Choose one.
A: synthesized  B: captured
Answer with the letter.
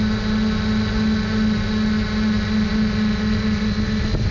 B